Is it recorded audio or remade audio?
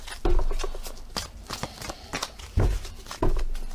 recorded